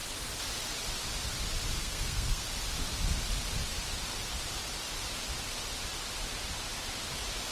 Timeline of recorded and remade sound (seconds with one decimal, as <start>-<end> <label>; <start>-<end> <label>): 0.0-1.8 recorded; 1.8-2.4 remade; 2.4-7.5 recorded